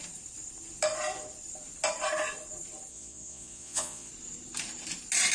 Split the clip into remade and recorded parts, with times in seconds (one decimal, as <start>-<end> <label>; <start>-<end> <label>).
0.0-2.9 recorded; 2.9-4.1 remade; 4.1-5.3 recorded